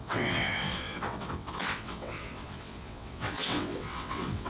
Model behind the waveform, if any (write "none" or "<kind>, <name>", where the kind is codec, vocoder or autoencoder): vocoder, WaveNeXt